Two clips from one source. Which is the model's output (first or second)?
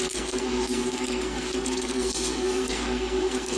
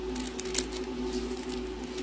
first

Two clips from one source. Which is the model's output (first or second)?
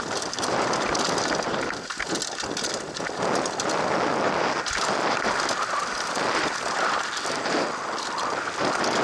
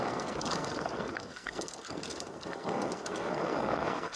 second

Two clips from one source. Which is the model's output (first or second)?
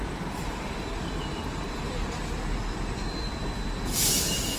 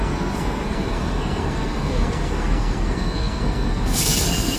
second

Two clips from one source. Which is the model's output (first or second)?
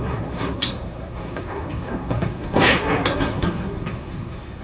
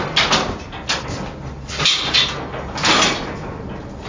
first